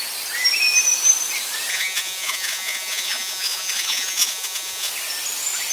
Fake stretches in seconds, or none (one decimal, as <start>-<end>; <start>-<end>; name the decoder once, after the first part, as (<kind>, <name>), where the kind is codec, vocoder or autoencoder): 1.7-4.9 (vocoder, Vocos)